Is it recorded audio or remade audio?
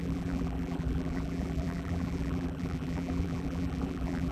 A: remade